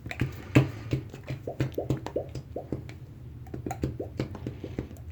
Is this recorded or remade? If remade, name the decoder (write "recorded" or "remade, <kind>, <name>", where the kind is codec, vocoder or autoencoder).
recorded